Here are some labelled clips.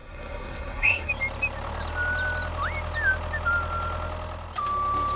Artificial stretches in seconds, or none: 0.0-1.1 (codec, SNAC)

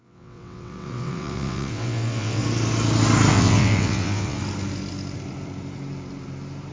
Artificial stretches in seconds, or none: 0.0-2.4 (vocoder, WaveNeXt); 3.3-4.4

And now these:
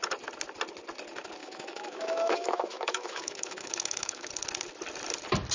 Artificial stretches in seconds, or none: 1.4-4.3 (autoencoder, DAC-VAE)